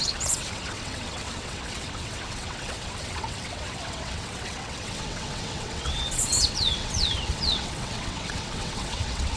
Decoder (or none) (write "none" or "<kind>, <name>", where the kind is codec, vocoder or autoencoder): vocoder, WaveNeXt